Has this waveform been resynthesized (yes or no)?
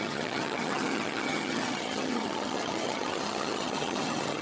yes